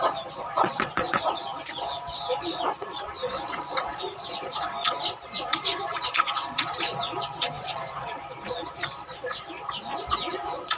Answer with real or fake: fake